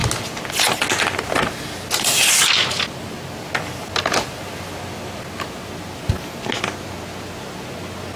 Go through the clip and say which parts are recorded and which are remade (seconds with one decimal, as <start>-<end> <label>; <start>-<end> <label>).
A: 0.0-8.2 recorded